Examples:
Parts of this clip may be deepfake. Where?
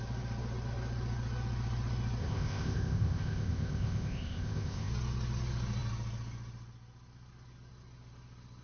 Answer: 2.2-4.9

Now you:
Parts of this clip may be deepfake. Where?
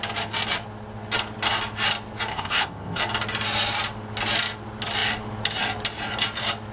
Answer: 2.3-3.0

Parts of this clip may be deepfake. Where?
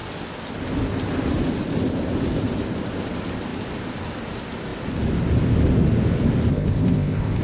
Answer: 6.5-7.4